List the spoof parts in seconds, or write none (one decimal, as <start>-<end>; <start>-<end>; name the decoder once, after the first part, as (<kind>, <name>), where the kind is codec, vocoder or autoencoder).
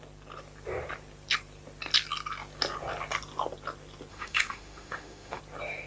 4.1-5.4 (autoencoder, DAC-VAE)